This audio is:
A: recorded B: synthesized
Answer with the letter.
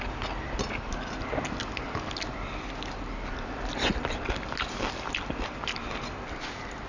A